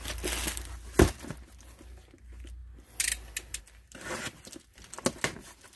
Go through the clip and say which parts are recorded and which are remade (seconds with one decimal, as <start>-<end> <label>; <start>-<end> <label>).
0.0-5.8 recorded